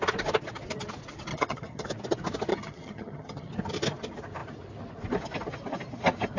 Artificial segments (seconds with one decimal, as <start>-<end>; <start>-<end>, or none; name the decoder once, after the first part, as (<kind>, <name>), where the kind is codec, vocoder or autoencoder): 1.3-1.9 (vocoder, HiFi-GAN); 2.5-3.5